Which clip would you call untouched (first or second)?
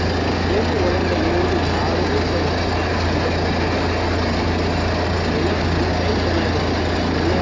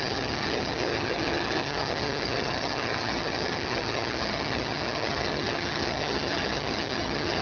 first